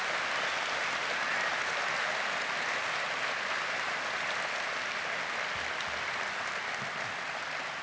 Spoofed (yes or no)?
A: no